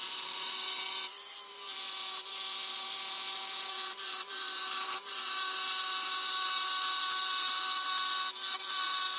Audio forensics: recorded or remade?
recorded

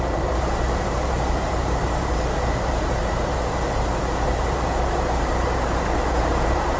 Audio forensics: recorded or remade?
remade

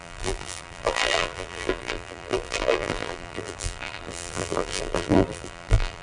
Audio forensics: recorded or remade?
remade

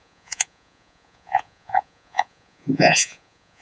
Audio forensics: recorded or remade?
remade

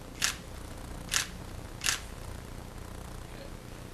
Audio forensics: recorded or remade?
recorded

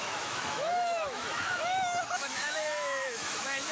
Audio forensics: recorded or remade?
remade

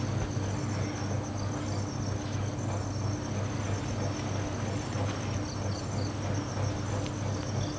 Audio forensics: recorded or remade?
recorded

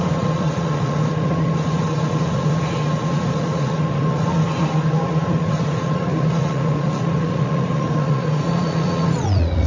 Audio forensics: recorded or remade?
remade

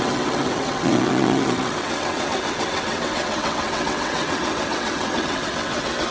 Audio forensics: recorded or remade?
remade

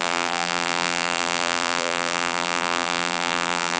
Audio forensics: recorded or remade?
remade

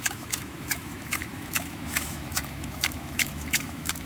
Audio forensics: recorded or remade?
remade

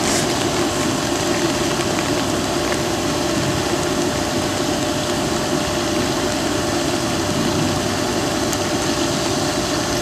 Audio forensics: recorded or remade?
recorded